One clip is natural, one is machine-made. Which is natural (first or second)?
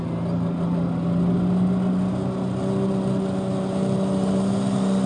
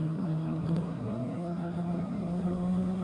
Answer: first